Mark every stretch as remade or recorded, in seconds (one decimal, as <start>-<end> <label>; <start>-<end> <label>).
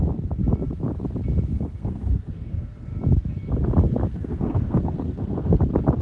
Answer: 0.0-1.8 recorded; 1.8-3.0 remade; 3.0-4.1 recorded; 4.1-5.6 remade; 5.6-6.0 recorded